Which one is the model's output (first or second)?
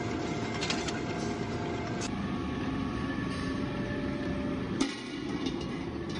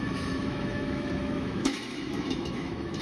second